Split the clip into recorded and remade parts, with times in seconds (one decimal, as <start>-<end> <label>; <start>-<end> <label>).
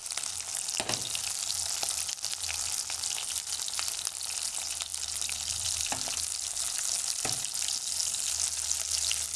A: 0.0-9.4 recorded